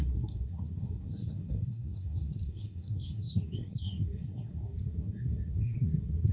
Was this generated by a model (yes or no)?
yes